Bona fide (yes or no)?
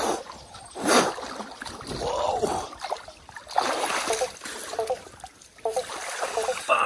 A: yes